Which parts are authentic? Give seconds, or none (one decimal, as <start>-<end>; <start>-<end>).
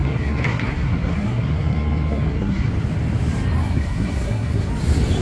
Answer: 2.7-3.6; 4.7-5.2